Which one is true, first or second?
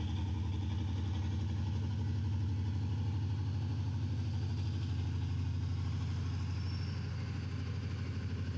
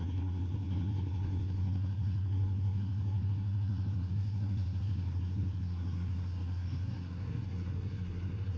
first